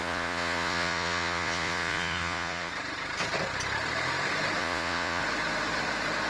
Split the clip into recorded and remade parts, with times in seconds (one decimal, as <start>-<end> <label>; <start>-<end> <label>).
0.0-2.7 remade; 2.7-4.6 recorded; 4.6-5.2 remade; 5.2-6.3 recorded